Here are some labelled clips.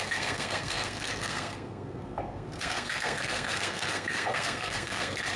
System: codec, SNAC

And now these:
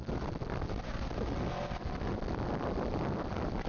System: none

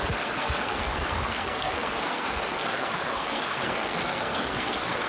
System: codec, SNAC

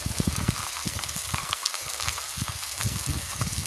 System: codec, SNAC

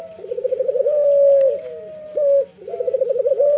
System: none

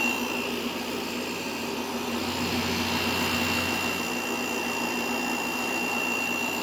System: none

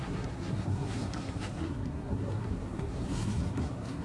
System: codec, SNAC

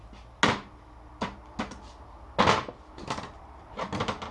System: none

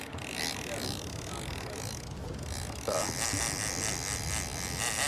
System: none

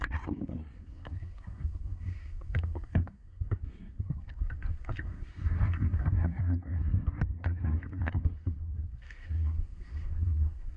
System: codec, SNAC